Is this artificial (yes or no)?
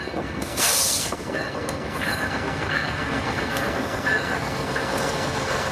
yes